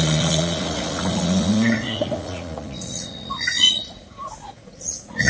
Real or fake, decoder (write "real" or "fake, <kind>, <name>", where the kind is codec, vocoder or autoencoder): fake, vocoder, Vocos